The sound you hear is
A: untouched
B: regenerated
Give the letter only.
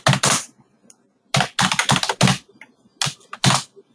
A